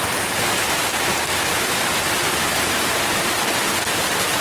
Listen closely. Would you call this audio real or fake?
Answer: real